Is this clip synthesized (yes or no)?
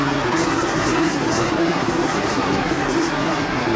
yes